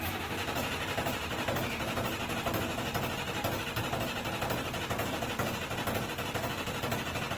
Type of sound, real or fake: real